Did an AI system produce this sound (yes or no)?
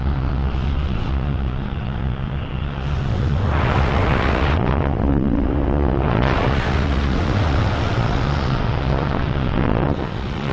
yes